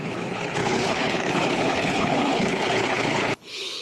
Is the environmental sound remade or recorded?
remade